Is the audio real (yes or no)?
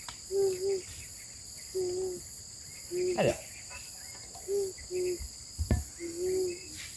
yes